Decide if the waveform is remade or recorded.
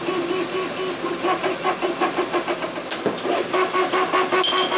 recorded